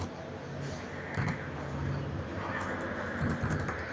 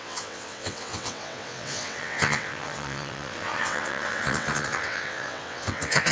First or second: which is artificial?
second